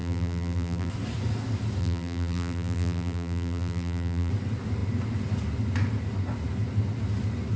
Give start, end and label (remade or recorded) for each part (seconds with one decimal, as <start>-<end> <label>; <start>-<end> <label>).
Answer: 0.0-0.9 remade; 0.9-1.8 recorded; 1.8-4.3 remade; 4.3-7.6 recorded